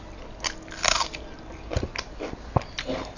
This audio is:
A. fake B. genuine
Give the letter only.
B